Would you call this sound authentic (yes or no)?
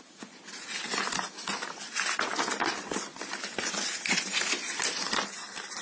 yes